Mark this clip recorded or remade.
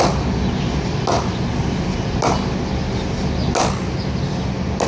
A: recorded